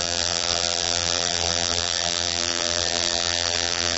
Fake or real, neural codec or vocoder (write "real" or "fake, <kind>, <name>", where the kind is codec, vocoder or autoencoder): fake, vocoder, BigVGAN v2